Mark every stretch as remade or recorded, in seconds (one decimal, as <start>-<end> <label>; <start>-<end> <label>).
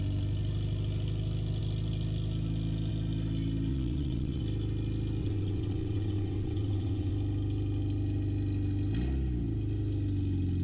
0.0-3.7 recorded; 3.7-4.4 remade; 4.4-5.2 recorded; 5.2-7.1 remade; 7.1-10.6 recorded